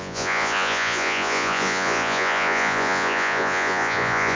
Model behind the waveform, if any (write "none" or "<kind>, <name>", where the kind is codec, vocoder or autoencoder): vocoder, Vocos